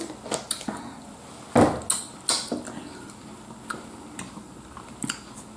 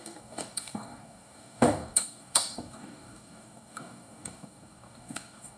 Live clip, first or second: first